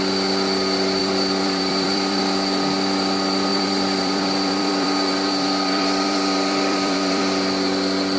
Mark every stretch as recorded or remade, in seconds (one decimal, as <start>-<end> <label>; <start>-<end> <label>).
0.0-1.0 recorded; 1.0-2.2 remade; 2.2-3.5 recorded; 3.5-7.2 remade; 7.2-8.2 recorded